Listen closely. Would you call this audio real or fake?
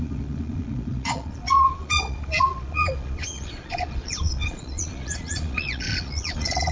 fake